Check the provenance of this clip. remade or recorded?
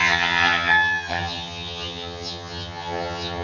remade